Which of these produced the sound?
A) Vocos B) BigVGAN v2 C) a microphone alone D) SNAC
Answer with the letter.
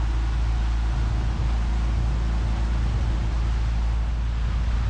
C